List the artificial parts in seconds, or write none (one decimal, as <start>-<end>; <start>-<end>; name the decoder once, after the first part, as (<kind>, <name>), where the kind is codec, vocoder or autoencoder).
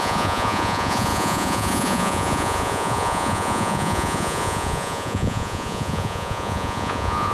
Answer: 0.0-7.3 (vocoder, Vocos)